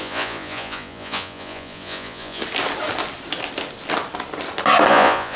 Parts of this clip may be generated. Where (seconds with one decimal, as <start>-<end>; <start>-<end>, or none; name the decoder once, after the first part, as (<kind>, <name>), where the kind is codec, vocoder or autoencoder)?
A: 0.0-2.4 (vocoder, Vocos); 4.9-5.4